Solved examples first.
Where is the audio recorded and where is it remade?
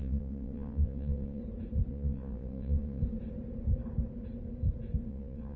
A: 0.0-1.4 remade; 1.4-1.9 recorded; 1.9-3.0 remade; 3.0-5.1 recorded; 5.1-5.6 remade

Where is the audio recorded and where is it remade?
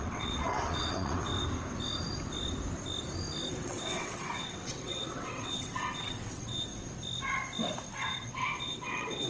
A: 0.0-1.3 remade; 1.3-3.5 recorded; 3.5-6.7 remade; 6.7-7.9 recorded; 7.9-9.3 remade